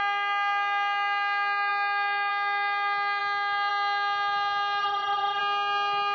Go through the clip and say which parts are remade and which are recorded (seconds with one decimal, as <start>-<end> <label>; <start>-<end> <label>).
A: 0.0-4.8 recorded; 4.8-5.4 remade; 5.4-6.1 recorded

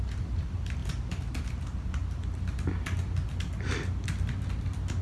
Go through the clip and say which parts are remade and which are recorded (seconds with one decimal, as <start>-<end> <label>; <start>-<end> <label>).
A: 0.0-5.0 recorded

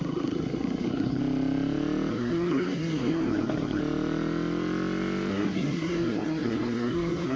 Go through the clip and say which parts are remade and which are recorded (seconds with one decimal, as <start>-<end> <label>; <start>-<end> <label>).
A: 0.0-1.2 remade; 1.2-2.1 recorded; 2.1-3.8 remade; 3.8-5.3 recorded; 5.3-7.4 remade

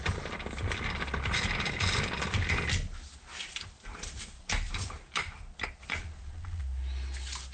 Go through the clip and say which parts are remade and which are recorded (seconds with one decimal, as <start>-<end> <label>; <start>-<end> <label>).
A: 0.0-5.8 recorded; 5.8-6.6 remade; 6.6-7.5 recorded

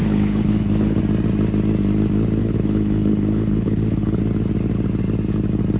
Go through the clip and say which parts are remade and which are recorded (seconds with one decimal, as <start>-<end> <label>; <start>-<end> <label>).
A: 0.0-1.0 remade; 1.0-2.4 recorded; 2.4-4.2 remade; 4.2-5.8 recorded